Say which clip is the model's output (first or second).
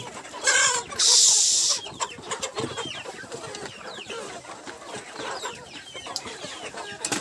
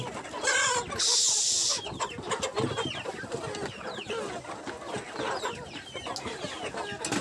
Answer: first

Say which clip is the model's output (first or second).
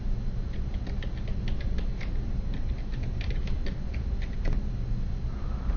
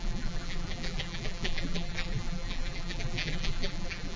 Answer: second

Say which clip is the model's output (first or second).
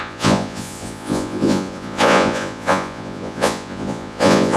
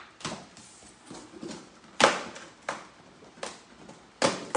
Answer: first